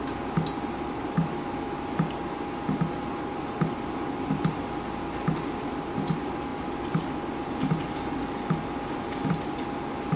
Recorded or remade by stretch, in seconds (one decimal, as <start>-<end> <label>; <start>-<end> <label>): 0.0-10.2 recorded